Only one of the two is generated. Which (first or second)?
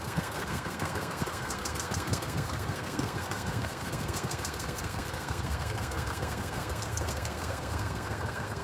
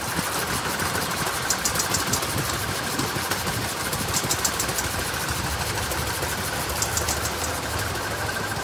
first